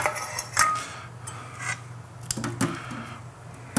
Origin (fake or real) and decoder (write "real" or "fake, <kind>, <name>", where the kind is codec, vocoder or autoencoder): real